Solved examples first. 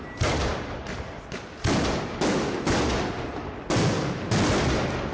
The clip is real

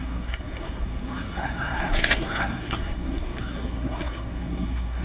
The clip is fake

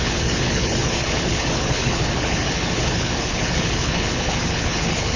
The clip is fake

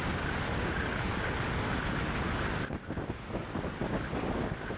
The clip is real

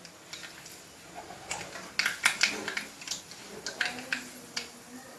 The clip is real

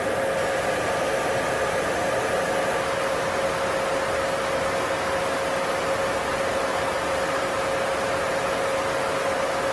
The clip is real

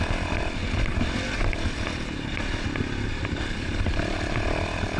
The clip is fake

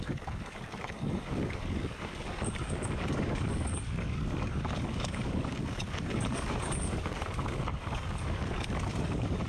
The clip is fake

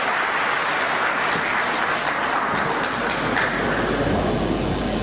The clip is real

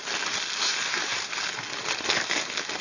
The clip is real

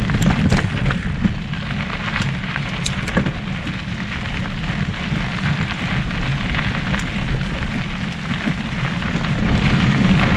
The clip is real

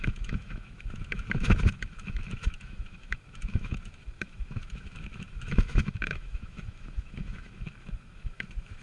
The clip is fake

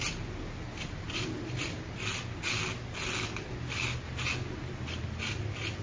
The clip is real